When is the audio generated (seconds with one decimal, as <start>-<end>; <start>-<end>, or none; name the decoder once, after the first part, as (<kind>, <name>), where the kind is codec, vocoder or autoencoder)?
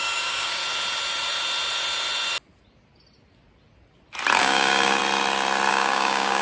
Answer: 0.0-0.6 (codec, DAC); 4.4-5.0; 5.7-6.4